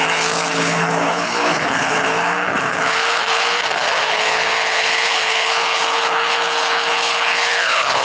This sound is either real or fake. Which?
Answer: fake